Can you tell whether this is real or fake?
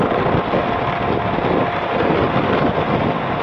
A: real